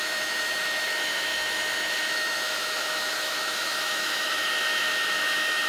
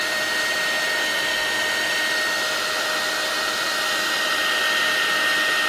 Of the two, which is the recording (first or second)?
second